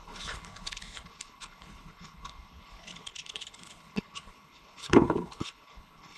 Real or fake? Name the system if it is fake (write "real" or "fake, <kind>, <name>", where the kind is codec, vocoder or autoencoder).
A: fake, codec, HILCodec